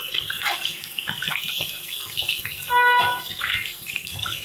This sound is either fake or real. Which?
fake